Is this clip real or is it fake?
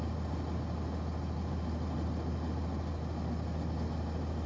real